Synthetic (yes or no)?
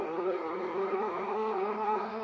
yes